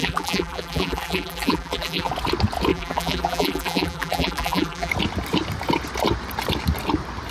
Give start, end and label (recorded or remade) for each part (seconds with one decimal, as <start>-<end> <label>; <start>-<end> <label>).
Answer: 0.0-2.1 remade; 2.1-2.7 recorded; 2.7-4.9 remade; 4.9-7.3 recorded